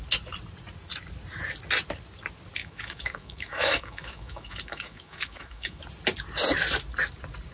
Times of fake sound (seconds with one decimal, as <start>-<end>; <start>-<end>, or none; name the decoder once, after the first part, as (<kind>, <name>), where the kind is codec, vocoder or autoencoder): 2.6-5.8 (autoencoder, DAC-VAE)

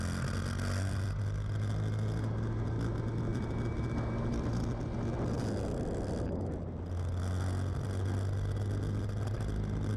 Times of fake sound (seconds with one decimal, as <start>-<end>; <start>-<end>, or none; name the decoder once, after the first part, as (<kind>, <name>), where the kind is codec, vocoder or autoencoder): 3.3-4.5 (vocoder, BigVGAN v2)

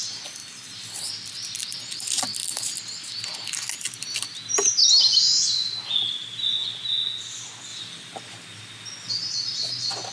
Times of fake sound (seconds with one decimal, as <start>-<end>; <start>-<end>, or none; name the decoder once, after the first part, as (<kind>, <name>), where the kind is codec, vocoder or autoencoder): 0.4-1.8 (vocoder, BigVGAN v2)

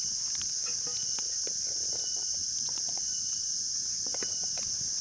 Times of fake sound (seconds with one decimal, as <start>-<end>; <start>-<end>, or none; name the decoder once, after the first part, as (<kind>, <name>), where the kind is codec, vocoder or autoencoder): 2.4-4.2 (vocoder, Vocos)

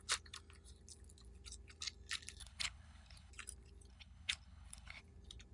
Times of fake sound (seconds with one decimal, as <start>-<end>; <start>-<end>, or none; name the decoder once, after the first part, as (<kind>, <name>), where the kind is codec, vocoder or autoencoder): 2.4-3.3 (codec, HILCodec); 3.9-5.0